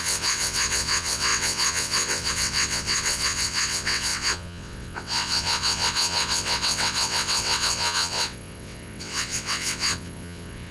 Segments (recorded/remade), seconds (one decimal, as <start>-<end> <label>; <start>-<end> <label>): 0.0-10.7 remade